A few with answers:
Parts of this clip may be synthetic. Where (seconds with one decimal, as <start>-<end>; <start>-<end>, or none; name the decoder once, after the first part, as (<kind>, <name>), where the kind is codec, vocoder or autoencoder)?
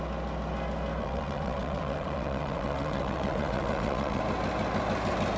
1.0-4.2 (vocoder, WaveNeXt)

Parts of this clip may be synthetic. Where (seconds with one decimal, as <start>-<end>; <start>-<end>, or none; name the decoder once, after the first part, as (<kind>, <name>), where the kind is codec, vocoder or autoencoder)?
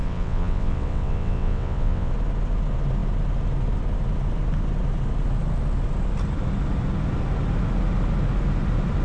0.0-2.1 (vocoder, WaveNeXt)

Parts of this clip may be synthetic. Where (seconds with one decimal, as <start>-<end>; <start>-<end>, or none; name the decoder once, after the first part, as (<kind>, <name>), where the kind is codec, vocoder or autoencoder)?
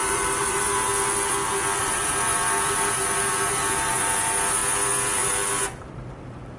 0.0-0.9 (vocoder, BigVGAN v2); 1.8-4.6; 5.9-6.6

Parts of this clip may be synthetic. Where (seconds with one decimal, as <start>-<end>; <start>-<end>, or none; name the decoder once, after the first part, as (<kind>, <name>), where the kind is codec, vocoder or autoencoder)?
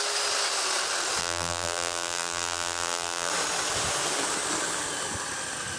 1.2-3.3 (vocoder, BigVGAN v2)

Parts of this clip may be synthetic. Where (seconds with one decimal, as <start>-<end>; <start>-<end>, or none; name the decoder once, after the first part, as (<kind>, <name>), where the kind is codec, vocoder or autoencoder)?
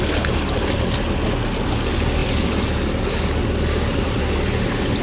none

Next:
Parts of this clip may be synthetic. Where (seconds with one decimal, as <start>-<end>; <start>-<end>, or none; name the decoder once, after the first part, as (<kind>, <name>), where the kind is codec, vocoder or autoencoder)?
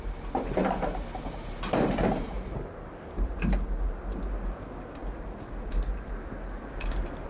0.6-4.0 (vocoder, BigVGAN v2)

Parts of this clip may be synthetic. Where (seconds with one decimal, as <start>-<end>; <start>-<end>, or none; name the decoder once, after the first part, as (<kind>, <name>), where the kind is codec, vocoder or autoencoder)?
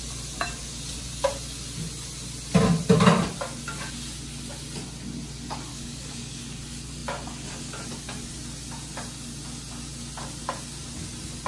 5.7-6.4 (codec, DAC)